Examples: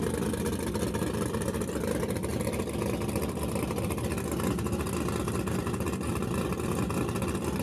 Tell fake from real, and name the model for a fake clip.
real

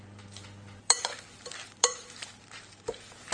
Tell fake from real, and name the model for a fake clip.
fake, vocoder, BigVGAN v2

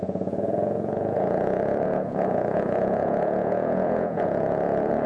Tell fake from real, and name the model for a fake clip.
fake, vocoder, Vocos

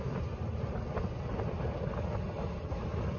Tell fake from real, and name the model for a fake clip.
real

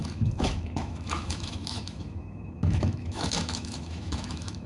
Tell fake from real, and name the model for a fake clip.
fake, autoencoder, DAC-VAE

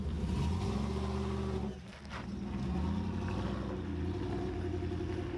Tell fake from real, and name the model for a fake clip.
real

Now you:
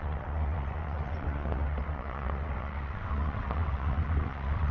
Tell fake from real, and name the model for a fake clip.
fake, vocoder, WaveNeXt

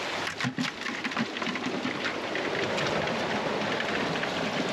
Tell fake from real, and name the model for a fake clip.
real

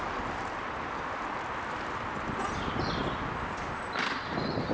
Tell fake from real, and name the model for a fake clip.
real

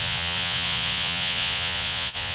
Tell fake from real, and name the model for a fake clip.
fake, vocoder, Vocos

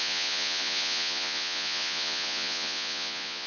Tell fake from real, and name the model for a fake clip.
fake, vocoder, Vocos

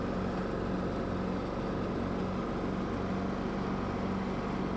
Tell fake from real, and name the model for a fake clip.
real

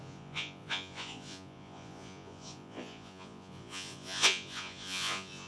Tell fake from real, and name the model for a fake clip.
fake, vocoder, Vocos